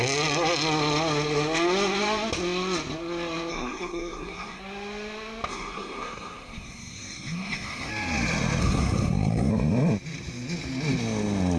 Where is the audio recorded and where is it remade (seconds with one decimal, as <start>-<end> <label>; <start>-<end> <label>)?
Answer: 0.0-3.5 recorded; 3.5-4.6 remade; 4.6-5.5 recorded; 5.5-7.9 remade; 7.9-8.6 recorded; 8.6-9.5 remade; 9.5-11.6 recorded